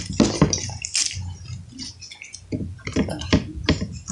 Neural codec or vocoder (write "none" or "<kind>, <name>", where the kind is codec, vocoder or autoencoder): none